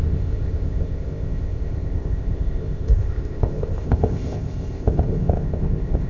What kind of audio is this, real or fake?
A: fake